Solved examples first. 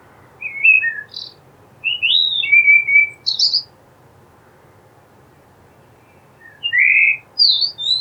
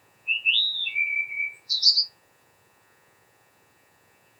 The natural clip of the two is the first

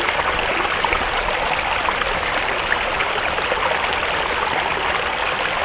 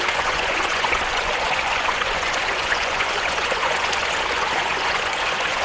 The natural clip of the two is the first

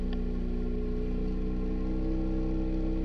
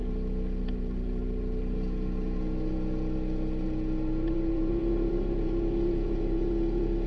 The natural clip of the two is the first